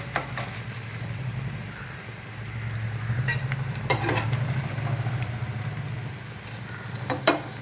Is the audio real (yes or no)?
no